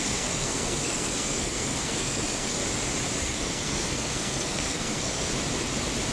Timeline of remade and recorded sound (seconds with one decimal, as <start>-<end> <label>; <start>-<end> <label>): 0.0-2.6 remade; 2.6-3.2 recorded; 3.2-5.3 remade; 5.3-6.1 recorded